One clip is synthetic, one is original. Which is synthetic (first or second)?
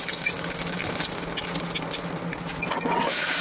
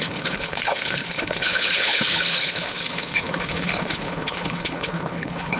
second